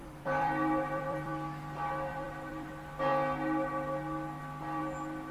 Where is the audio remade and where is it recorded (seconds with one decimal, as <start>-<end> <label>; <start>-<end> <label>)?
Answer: 0.0-1.3 remade; 1.3-2.1 recorded; 2.1-2.7 remade; 2.7-5.3 recorded